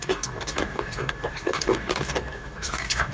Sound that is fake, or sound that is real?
fake